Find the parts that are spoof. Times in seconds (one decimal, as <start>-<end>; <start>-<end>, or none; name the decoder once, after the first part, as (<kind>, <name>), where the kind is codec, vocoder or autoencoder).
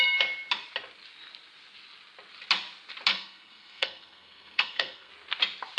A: 3.1-5.1 (codec, SNAC)